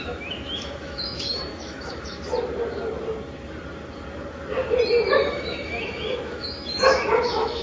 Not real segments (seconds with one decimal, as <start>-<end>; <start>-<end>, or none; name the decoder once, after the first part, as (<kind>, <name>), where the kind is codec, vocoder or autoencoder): 0.0-2.3 (autoencoder, DAC-VAE); 5.3-7.6